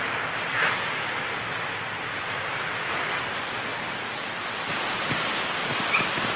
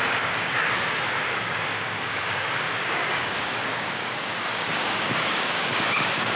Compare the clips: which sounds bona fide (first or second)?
first